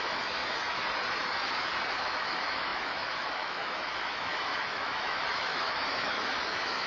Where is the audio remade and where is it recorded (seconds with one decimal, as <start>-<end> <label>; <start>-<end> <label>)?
0.0-0.4 remade; 0.4-1.9 recorded; 1.9-6.9 remade